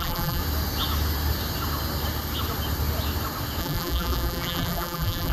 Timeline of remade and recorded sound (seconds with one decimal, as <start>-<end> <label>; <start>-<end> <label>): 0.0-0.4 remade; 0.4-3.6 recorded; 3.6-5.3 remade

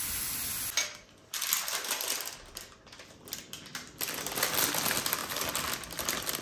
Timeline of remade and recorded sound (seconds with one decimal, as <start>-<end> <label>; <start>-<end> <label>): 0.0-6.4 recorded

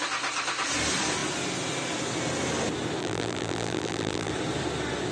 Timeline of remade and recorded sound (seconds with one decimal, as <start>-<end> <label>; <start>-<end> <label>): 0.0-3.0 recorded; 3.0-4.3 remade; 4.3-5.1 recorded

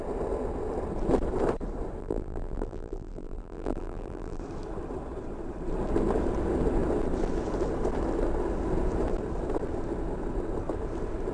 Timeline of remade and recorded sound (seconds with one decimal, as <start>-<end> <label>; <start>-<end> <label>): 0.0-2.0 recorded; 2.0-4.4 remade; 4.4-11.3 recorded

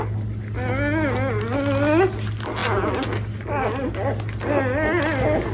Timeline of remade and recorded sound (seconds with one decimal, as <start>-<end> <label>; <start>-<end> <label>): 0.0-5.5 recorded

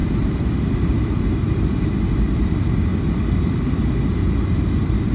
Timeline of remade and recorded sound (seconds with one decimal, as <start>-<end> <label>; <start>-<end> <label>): 0.0-2.9 remade; 2.9-5.1 recorded